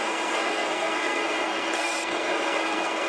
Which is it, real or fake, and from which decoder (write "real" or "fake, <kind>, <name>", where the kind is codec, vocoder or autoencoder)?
fake, codec, SNAC